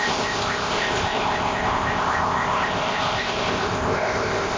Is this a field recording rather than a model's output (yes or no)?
no